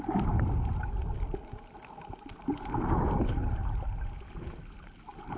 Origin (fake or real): real